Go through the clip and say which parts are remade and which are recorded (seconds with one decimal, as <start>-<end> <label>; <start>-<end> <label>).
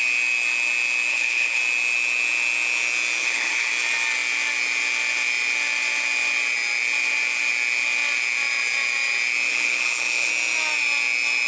0.0-1.1 recorded; 1.1-1.6 remade; 1.6-3.2 recorded; 3.2-3.7 remade; 3.7-9.5 recorded; 9.5-10.3 remade; 10.3-11.5 recorded